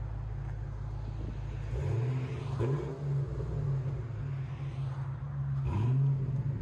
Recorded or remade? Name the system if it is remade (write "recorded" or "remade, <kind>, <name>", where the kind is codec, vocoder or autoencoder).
recorded